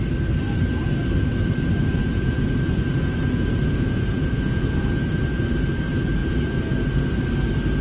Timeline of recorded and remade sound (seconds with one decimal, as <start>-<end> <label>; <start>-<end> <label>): 0.0-2.0 recorded; 2.0-5.1 remade; 5.1-6.2 recorded; 6.2-7.0 remade; 7.0-7.8 recorded